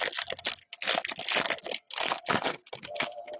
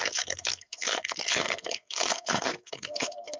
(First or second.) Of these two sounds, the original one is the first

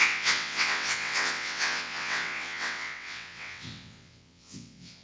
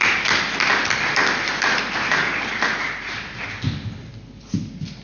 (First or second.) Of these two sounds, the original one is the second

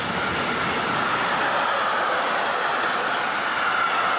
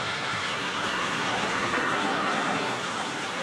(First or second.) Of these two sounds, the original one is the first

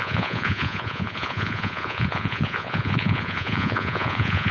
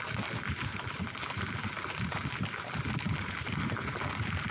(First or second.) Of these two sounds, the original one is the second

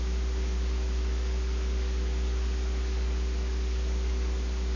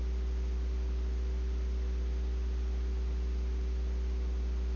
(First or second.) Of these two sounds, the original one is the second